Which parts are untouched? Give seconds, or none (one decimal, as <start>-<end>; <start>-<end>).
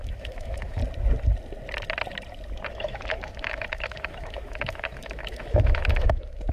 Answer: 0.8-2.7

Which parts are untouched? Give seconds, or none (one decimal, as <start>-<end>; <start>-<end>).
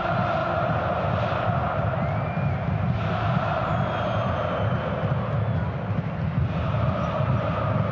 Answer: 0.0-7.9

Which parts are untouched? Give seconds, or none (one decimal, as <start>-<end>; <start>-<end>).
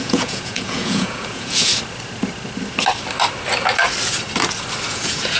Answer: 1.7-4.9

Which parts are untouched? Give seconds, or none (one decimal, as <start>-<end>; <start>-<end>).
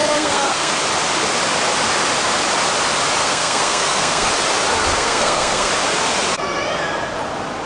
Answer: 0.7-3.2; 4.3-4.9; 5.7-7.7